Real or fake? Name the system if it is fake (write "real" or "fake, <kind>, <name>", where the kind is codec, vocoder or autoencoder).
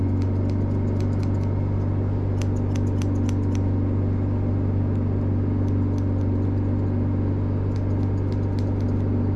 real